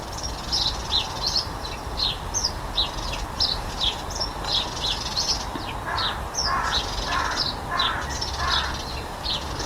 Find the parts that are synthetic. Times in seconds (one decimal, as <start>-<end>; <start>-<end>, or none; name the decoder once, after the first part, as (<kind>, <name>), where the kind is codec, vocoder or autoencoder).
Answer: 4.3-5.0 (vocoder, BigVGAN v2)